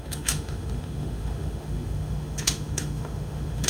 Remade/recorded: remade